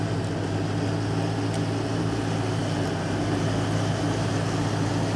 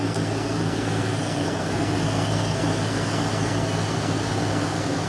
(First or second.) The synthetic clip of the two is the second